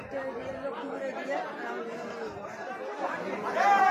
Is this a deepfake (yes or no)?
no